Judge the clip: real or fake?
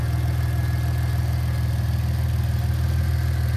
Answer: real